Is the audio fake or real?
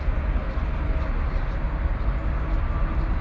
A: real